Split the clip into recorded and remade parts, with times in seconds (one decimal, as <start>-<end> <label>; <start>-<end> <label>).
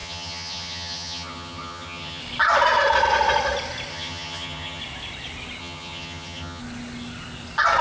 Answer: 0.0-2.2 remade; 2.2-3.9 recorded; 3.9-4.8 remade; 4.8-5.6 recorded; 5.6-6.6 remade; 6.6-7.8 recorded